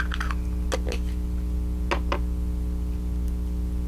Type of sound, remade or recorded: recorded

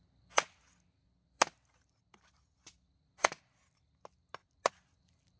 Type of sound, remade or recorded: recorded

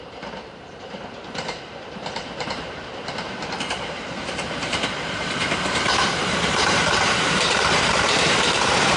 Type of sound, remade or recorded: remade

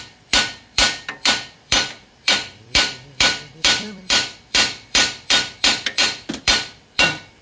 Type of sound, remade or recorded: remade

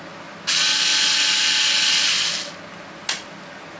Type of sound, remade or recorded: recorded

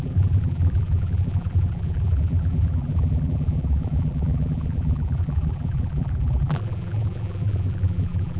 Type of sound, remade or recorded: remade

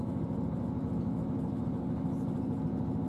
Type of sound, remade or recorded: recorded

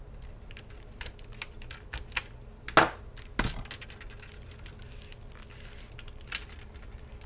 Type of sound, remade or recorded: recorded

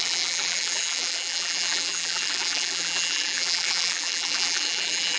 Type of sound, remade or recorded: remade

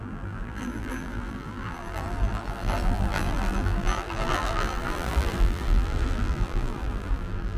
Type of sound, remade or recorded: remade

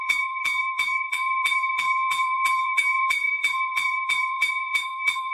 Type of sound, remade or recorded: remade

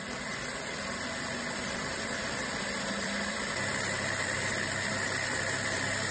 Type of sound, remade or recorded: remade